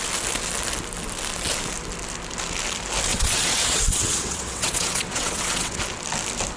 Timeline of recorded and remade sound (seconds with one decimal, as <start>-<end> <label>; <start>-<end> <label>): 0.0-3.1 recorded; 3.1-5.8 remade; 5.8-6.6 recorded